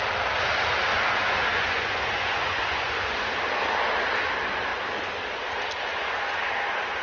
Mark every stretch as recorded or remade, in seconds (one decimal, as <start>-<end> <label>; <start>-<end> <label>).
0.0-0.9 recorded; 0.9-3.3 remade; 3.3-5.9 recorded; 5.9-6.4 remade; 6.4-7.0 recorded